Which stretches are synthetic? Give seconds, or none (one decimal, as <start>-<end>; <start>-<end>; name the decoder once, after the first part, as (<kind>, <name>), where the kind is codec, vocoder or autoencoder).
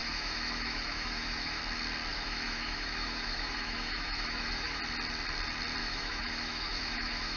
0.0-1.6 (autoencoder, DAC-VAE); 2.1-4.8; 5.8-7.4